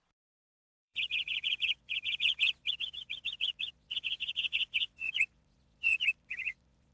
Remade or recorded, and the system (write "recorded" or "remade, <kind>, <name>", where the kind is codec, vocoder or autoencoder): remade, vocoder, Vocos